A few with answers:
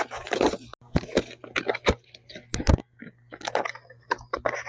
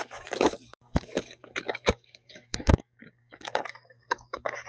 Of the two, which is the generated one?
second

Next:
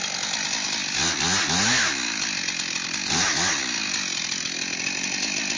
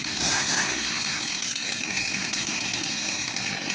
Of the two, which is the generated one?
second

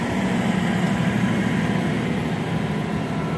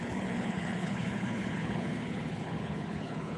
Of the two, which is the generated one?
second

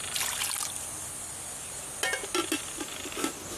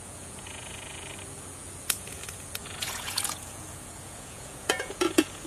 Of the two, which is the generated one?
second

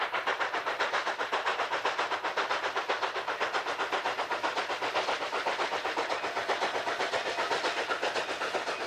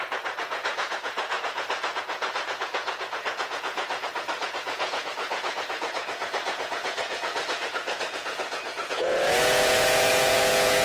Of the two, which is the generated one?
second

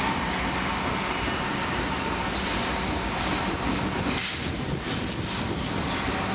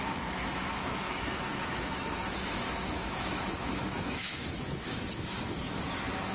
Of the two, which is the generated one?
second